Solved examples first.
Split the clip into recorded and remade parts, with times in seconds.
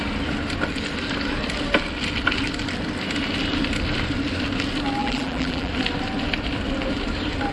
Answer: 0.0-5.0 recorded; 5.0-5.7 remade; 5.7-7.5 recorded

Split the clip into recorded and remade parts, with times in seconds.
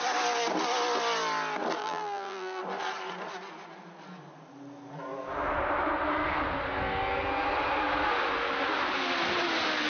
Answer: 0.0-1.8 recorded; 1.8-2.6 remade; 2.6-9.9 recorded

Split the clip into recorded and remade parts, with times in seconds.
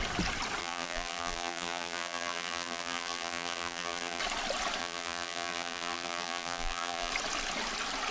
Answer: 0.0-0.6 recorded; 0.6-4.2 remade; 4.2-4.8 recorded; 4.8-7.1 remade; 7.1-8.1 recorded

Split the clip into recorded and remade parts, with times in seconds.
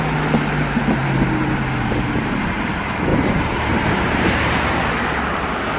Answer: 0.0-1.0 recorded; 1.0-2.7 remade; 2.7-3.1 recorded; 3.1-4.7 remade; 4.7-5.8 recorded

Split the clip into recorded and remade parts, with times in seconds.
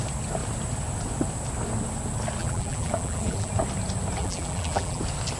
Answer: 0.0-2.4 recorded; 2.4-3.5 remade; 3.5-4.2 recorded; 4.2-5.0 remade; 5.0-5.4 recorded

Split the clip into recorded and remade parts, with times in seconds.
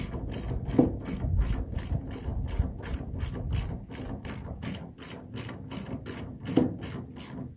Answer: 0.0-7.6 recorded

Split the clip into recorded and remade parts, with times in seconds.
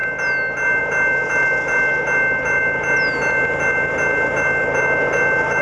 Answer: 0.0-5.6 recorded